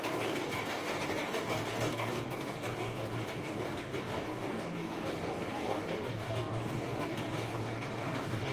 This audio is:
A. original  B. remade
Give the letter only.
B